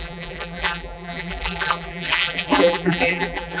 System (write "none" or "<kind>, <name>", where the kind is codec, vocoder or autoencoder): vocoder, BigVGAN v2